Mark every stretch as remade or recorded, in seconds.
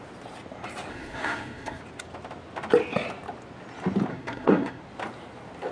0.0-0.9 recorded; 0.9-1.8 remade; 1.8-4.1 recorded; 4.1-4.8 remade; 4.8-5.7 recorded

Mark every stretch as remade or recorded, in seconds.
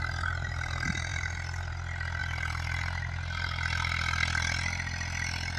0.0-5.6 recorded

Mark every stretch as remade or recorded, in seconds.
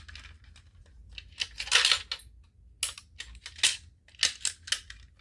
0.0-5.2 recorded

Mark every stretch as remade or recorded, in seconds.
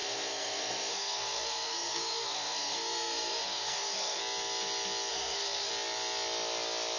0.0-4.2 remade; 4.2-5.1 recorded; 5.1-5.7 remade; 5.7-7.0 recorded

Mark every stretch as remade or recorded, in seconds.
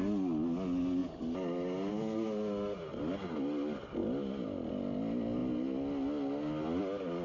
0.0-7.2 recorded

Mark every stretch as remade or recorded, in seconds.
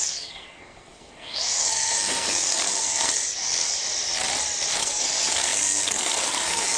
0.0-3.8 remade; 3.8-4.8 recorded; 4.8-6.8 remade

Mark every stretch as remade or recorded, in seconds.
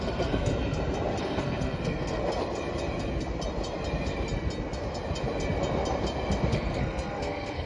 0.0-0.5 remade; 0.5-1.2 recorded; 1.2-2.2 remade; 2.2-6.5 recorded; 6.5-7.7 remade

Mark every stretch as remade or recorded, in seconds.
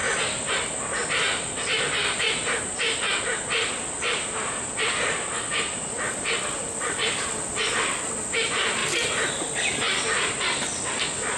0.0-11.4 recorded